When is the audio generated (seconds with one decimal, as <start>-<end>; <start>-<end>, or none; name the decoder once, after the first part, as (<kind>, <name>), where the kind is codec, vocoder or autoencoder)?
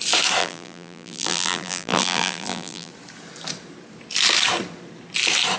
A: 0.4-2.9 (vocoder, BigVGAN v2)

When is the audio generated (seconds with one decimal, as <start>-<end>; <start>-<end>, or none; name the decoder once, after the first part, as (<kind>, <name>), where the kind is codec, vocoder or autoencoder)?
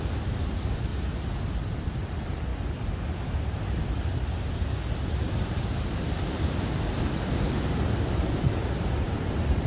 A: 0.0-0.9 (vocoder, BigVGAN v2); 1.8-2.5; 3.4-9.7